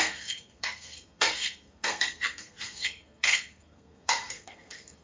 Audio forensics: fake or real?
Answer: fake